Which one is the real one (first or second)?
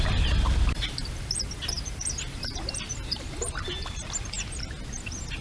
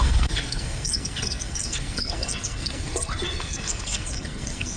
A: first